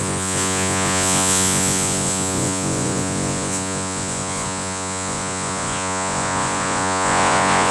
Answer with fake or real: fake